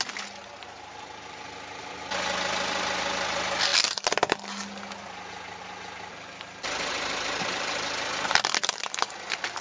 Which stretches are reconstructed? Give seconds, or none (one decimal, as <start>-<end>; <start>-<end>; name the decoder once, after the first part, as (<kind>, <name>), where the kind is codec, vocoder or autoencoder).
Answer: none